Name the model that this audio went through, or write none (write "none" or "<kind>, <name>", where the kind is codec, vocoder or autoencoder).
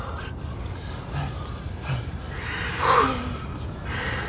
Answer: none